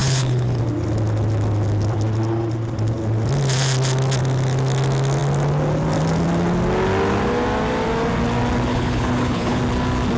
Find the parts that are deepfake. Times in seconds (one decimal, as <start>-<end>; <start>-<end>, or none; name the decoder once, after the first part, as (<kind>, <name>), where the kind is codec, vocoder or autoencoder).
0.0-0.6 (codec, HILCodec); 8.7-9.6